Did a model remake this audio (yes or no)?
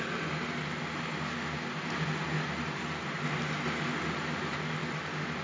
no